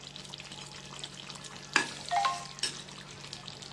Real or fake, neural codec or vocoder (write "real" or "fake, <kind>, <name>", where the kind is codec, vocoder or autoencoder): real